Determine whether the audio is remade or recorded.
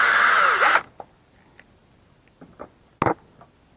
recorded